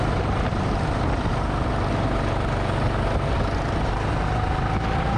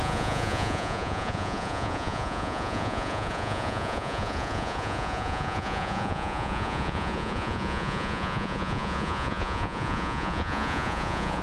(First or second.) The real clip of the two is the first